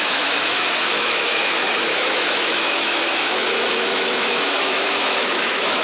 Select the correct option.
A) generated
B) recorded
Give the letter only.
A